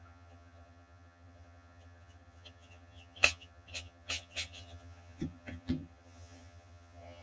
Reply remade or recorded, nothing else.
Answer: remade